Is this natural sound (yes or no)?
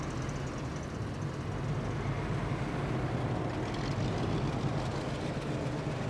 yes